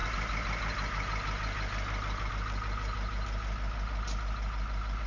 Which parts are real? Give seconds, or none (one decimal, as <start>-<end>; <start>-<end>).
0.0-5.1